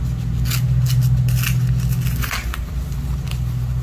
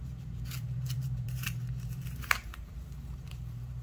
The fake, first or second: second